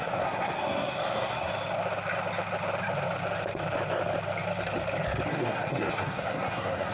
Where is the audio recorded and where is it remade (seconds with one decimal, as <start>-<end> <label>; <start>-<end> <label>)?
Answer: 0.0-1.5 remade; 1.5-5.3 recorded; 5.3-6.9 remade